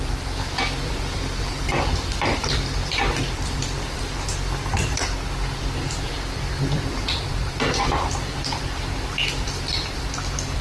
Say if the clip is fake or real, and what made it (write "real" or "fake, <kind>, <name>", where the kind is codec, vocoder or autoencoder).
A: fake, vocoder, BigVGAN v2